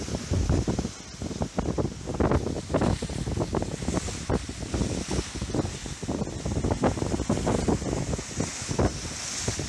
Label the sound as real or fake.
real